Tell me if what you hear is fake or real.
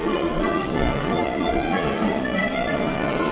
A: fake